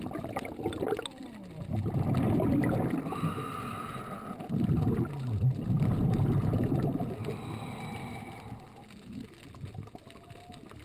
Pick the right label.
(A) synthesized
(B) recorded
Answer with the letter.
B